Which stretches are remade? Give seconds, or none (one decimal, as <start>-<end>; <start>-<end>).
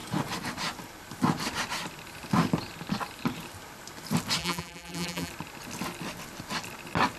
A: 4.4-5.3